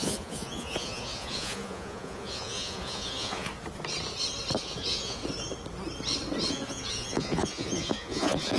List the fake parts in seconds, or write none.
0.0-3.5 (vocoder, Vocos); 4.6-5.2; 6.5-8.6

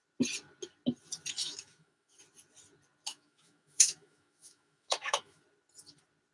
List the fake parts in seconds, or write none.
1.4-2.2 (autoencoder, DAC-VAE); 3.1-5.4

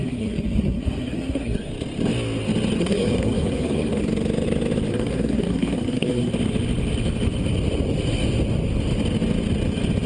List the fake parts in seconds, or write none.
0.0-1.7 (codec, SNAC); 2.8-4.0; 4.9-6.3

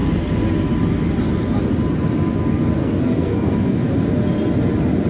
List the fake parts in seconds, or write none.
2.8-3.9 (codec, SNAC)

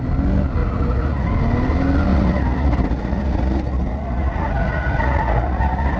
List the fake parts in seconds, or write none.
0.6-1.3 (vocoder, Vocos); 2.1-6.0

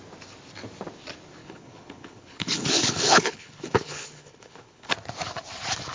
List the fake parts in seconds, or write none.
1.4-4.9 (codec, HILCodec)

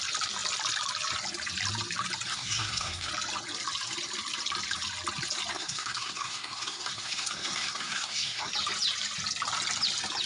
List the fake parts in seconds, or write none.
2.3-3.1 (codec, SNAC); 5.5-8.5